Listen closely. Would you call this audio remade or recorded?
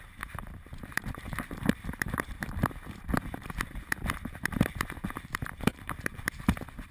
remade